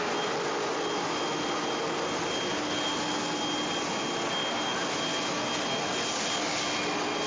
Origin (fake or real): real